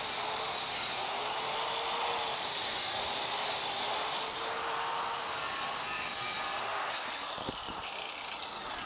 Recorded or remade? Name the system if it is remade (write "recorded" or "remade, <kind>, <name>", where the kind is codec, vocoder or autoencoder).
remade, vocoder, BigVGAN v2